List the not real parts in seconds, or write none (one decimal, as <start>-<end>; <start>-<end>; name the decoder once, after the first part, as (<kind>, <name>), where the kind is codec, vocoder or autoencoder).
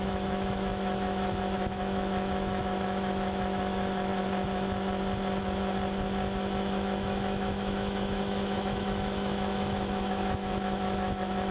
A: 0.0-4.1 (autoencoder, DAC-VAE); 6.6-11.5